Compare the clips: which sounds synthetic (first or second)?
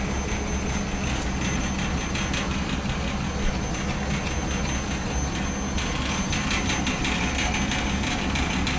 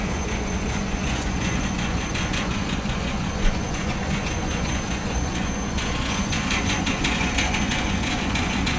second